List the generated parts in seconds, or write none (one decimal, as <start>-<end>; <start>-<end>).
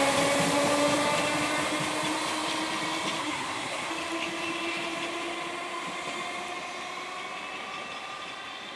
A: 3.2-3.9